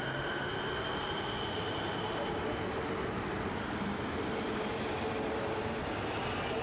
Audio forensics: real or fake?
real